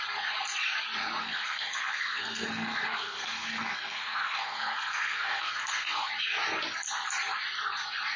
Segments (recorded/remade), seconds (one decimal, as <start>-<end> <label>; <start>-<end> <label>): 0.0-1.2 recorded; 1.2-6.1 remade; 6.1-8.2 recorded